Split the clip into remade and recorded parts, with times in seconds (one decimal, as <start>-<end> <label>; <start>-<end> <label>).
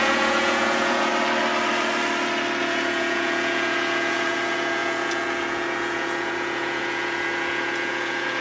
0.0-1.1 remade; 1.1-2.6 recorded; 2.6-8.4 remade